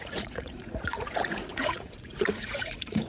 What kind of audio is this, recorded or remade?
remade